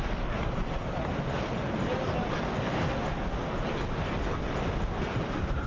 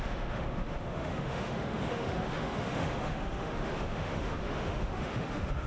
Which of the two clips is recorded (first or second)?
first